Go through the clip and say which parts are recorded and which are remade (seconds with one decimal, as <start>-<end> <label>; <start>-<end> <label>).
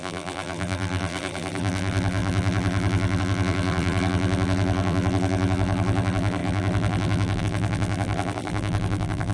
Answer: 0.0-9.3 remade